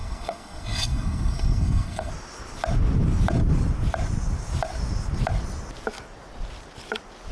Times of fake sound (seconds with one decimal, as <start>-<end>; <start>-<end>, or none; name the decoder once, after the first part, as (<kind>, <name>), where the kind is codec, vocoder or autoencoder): 0.0-2.1 (codec, SNAC)